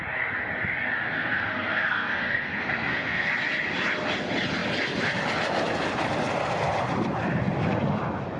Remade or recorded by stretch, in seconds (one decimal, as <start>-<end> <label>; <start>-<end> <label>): 0.0-1.2 recorded; 1.2-3.3 remade; 3.3-8.4 recorded